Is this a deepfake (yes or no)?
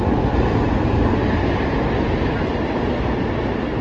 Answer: no